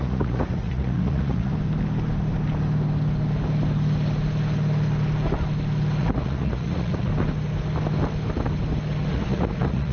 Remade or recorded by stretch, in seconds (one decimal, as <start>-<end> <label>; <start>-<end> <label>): 0.0-1.5 remade; 1.5-6.0 recorded; 6.0-7.1 remade; 7.1-9.1 recorded; 9.1-9.9 remade